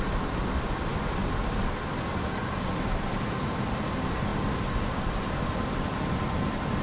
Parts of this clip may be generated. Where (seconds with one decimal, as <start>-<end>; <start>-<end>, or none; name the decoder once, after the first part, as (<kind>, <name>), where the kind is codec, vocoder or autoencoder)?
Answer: none